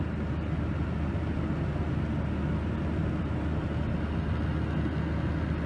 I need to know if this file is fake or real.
real